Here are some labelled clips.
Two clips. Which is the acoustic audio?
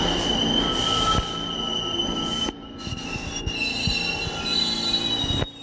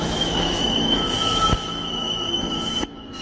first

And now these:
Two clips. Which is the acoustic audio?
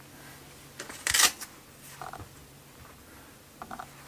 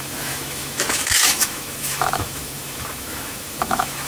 first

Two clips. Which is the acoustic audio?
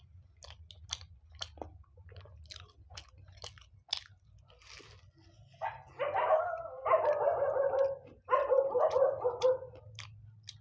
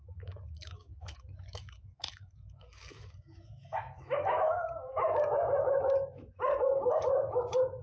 first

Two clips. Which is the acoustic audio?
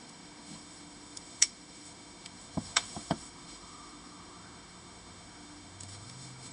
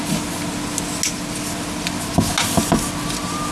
second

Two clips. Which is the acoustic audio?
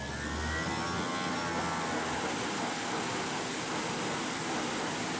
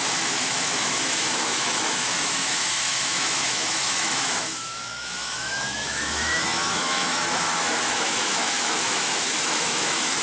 first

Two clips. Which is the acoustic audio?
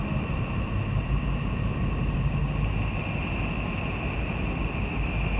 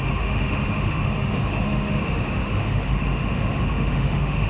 first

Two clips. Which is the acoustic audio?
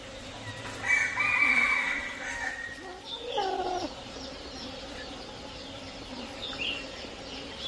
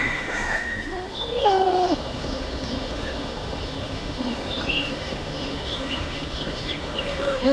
first